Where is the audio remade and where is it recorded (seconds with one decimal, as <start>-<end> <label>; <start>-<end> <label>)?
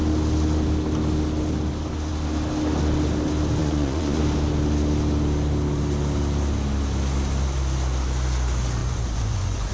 0.0-3.6 recorded; 3.6-4.2 remade; 4.2-8.8 recorded; 8.8-9.7 remade